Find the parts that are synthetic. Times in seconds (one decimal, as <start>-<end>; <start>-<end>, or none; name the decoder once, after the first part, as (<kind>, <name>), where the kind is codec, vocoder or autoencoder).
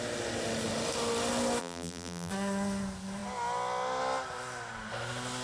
1.6-2.3 (vocoder, BigVGAN v2)